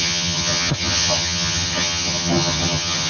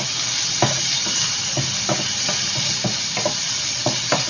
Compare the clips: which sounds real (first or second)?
second